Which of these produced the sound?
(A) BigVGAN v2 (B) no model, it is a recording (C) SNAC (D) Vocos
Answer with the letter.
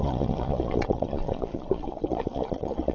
D